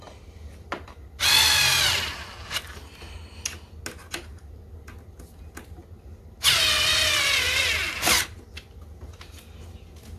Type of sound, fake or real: real